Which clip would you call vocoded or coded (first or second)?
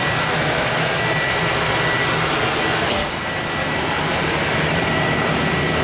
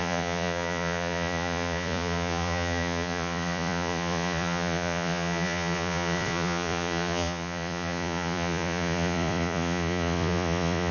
second